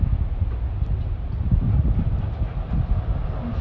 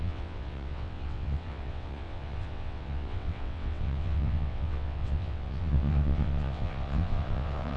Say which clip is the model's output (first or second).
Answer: second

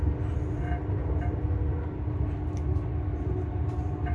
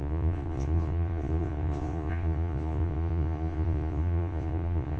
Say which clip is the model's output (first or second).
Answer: second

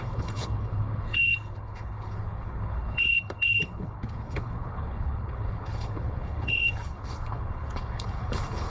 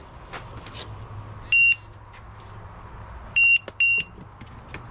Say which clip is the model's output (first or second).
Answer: first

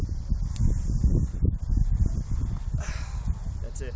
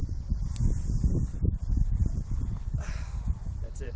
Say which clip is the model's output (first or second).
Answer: second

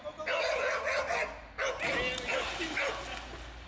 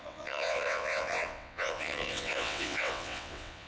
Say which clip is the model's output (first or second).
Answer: second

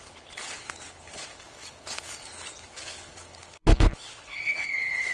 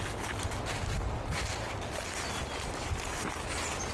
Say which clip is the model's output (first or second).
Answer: first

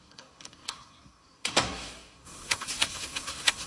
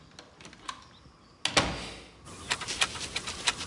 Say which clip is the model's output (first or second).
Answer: first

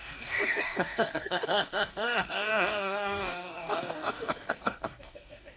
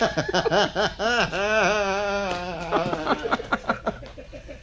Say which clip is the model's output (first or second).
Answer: first